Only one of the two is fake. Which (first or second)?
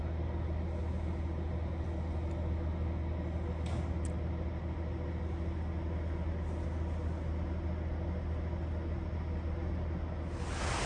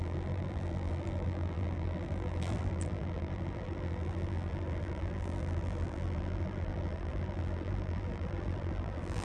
second